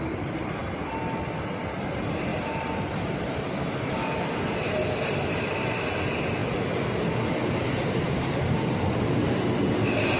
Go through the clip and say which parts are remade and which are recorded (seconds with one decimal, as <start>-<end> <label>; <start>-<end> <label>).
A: 0.0-10.2 recorded